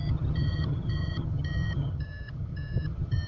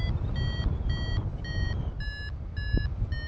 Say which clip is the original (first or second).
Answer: second